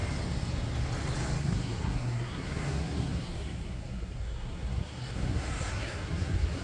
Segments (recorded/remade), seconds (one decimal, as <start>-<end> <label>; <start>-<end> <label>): 0.0-1.4 recorded; 1.4-6.6 remade